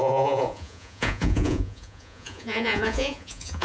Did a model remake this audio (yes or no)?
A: yes